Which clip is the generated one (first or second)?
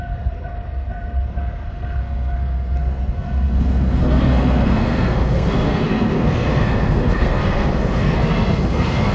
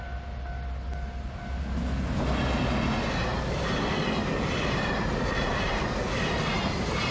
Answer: first